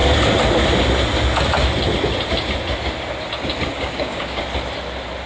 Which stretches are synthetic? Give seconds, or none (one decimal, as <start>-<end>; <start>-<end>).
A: 3.7-4.4